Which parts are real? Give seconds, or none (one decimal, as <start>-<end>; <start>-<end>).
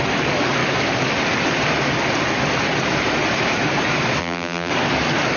0.0-4.2; 4.7-5.4